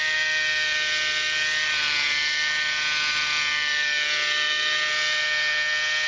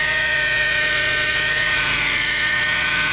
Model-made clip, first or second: second